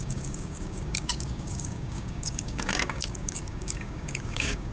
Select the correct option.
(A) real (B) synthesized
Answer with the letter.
B